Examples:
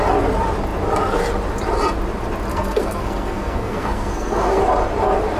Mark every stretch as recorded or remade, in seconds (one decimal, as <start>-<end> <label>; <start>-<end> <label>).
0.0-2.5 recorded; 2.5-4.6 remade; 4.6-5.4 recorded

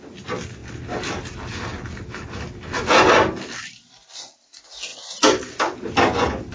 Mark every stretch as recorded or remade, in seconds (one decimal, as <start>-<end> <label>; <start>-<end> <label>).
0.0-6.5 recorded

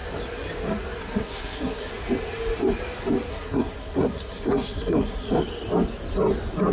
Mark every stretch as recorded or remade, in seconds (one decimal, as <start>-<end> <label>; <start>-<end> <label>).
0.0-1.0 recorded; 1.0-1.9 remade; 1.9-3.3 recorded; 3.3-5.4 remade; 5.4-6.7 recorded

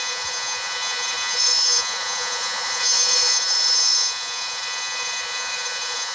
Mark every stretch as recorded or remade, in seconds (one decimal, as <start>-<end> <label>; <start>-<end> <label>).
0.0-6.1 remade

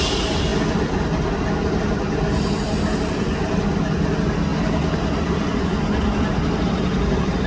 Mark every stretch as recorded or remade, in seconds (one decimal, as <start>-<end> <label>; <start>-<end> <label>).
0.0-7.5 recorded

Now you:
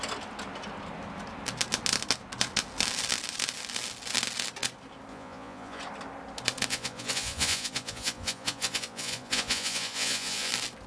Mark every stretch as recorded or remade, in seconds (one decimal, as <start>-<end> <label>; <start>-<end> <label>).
0.0-5.1 recorded; 5.1-5.8 remade; 5.8-6.7 recorded; 6.7-10.5 remade; 10.5-10.9 recorded

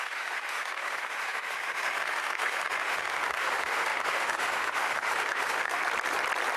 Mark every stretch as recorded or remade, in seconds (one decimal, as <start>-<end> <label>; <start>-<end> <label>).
0.0-5.8 remade; 5.8-6.6 recorded